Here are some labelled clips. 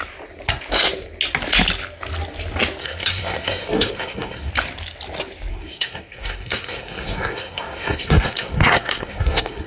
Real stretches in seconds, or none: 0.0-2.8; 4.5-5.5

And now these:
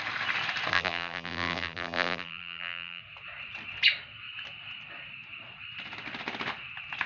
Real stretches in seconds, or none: 0.0-0.7; 3.0-7.1

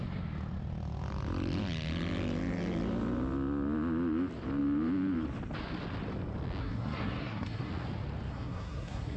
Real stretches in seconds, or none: 0.0-6.6; 7.7-8.3